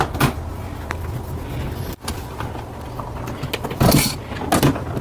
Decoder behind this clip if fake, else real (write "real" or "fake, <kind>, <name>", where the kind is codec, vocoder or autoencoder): real